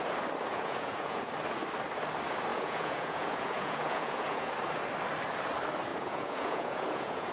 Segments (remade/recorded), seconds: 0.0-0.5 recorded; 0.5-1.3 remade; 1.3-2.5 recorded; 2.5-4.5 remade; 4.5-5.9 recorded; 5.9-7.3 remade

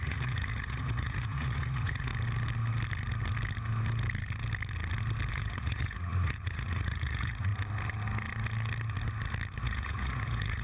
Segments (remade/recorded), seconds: 0.0-2.1 remade; 2.1-5.3 recorded; 5.3-7.5 remade; 7.5-9.6 recorded; 9.6-10.6 remade

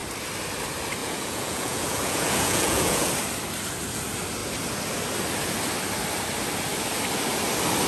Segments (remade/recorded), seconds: 0.0-1.0 recorded; 1.0-3.1 remade; 3.1-7.9 recorded

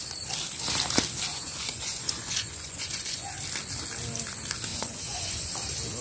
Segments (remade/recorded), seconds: 0.0-1.3 recorded; 1.3-3.3 remade; 3.3-4.7 recorded; 4.7-5.5 remade; 5.5-6.0 recorded